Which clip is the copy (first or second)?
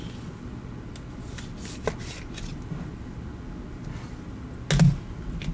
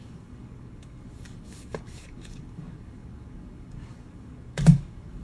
second